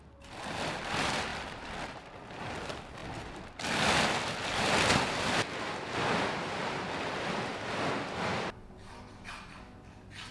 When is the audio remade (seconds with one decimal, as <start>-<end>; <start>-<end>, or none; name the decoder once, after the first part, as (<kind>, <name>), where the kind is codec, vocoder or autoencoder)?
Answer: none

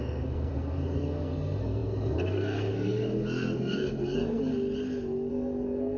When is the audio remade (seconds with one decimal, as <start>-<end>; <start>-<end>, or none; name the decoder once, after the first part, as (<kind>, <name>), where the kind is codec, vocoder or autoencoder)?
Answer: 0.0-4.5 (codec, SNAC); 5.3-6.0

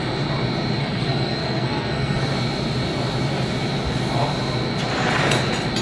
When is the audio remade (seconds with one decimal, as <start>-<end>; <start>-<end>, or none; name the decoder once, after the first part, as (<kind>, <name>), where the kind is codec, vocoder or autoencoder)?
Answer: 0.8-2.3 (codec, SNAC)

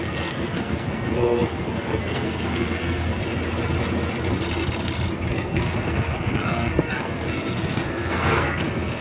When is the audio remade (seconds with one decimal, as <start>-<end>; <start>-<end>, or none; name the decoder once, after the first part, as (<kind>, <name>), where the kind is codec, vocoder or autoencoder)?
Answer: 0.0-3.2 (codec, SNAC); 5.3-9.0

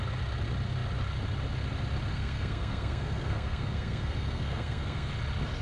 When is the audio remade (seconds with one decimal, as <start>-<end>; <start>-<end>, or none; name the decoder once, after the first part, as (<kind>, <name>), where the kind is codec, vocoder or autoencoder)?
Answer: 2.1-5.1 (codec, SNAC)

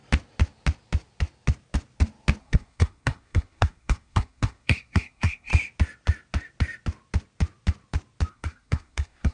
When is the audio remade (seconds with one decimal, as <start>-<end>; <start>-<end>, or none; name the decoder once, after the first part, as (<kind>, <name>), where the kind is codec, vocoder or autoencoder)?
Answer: 2.4-5.5 (codec, SNAC); 8.3-9.3

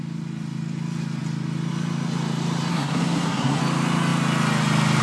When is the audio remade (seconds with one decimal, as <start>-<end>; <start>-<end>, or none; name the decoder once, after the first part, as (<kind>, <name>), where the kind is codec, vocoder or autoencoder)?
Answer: 2.7-3.6 (codec, SNAC)